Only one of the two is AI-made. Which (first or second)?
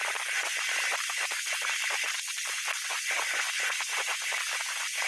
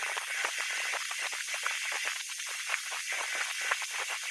first